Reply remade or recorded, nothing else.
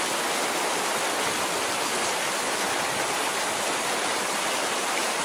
recorded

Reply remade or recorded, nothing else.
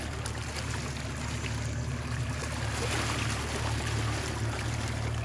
recorded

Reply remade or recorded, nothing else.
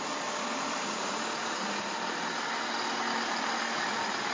recorded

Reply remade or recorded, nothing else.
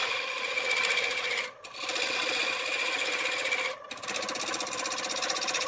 recorded